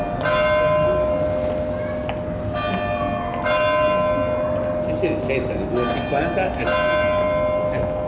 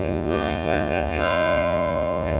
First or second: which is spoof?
second